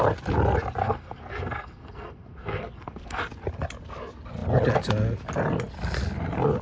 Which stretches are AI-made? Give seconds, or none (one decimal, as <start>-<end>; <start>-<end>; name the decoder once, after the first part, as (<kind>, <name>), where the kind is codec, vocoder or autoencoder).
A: 0.8-3.2 (codec, SNAC)